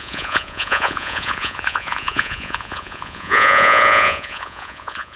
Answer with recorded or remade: remade